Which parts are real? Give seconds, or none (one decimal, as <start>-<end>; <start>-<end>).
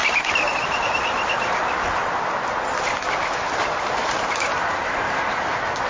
0.0-5.9